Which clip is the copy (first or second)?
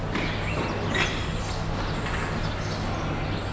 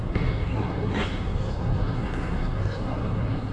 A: second